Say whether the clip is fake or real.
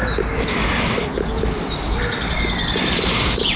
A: real